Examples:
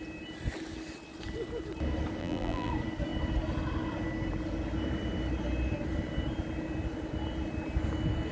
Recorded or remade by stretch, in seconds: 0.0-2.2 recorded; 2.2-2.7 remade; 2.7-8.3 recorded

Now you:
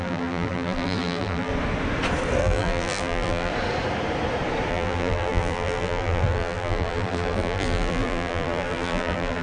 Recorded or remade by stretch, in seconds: 0.0-1.5 remade; 1.5-2.4 recorded; 2.4-3.5 remade; 3.5-4.7 recorded; 4.7-9.4 remade